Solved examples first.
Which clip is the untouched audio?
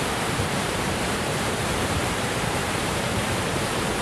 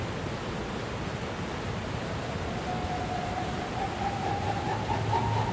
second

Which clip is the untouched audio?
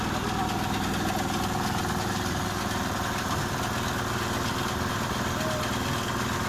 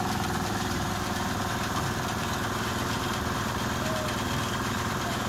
first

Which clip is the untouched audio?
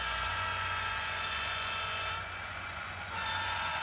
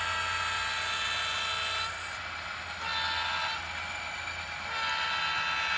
second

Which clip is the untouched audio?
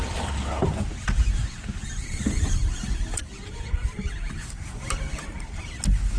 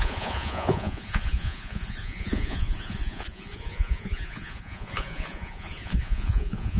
first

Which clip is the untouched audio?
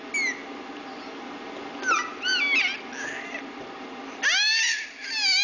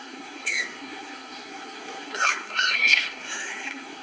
first